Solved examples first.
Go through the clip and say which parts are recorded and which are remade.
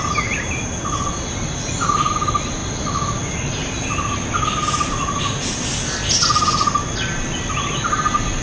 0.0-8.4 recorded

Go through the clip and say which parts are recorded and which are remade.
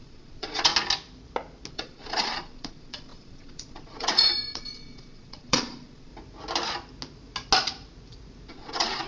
0.0-0.7 remade; 0.7-1.7 recorded; 1.7-6.1 remade; 6.1-8.5 recorded; 8.5-9.1 remade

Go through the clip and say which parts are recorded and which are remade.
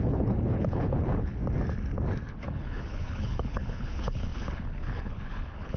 0.0-1.4 remade; 1.4-2.3 recorded; 2.3-5.8 remade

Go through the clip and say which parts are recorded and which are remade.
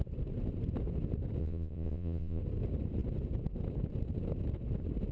0.0-1.4 recorded; 1.4-2.4 remade; 2.4-5.1 recorded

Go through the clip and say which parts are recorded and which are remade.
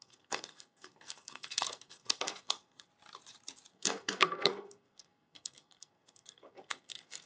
0.0-2.9 remade; 2.9-3.7 recorded; 3.7-7.3 remade